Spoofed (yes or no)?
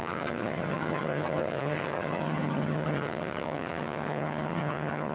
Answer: yes